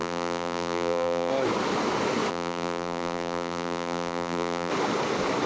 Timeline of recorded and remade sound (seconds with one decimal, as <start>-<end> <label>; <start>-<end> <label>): 0.0-1.3 remade; 1.3-2.3 recorded; 2.3-4.7 remade; 4.7-5.5 recorded